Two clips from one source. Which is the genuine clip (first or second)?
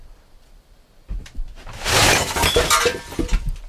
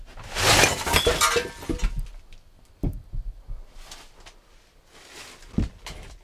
second